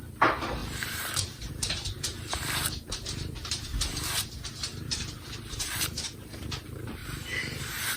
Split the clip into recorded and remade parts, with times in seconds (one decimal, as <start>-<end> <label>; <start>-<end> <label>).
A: 0.0-8.0 remade